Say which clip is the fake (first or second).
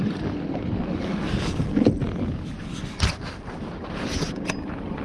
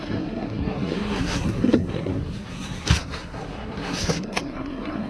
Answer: second